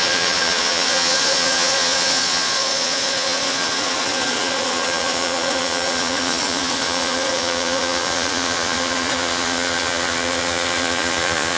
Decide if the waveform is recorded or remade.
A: remade